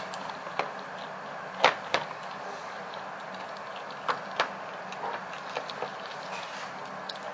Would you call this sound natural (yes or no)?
yes